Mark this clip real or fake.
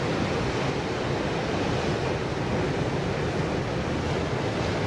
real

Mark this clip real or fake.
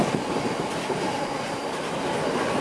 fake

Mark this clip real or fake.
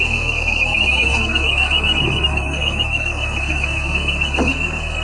fake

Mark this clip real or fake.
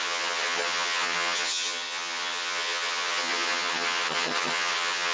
fake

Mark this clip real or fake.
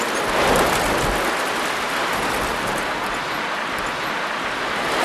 real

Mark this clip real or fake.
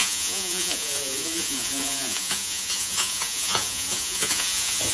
fake